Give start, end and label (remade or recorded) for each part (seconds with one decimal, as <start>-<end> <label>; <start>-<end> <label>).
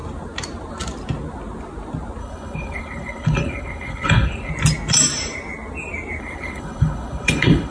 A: 0.0-2.2 recorded; 2.2-4.5 remade; 4.5-6.2 recorded; 6.2-7.7 remade